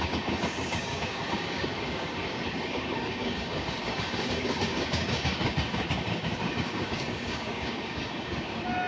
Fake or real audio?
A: fake